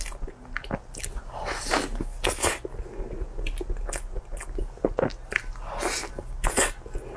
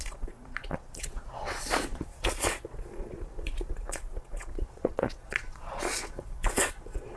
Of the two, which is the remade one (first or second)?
second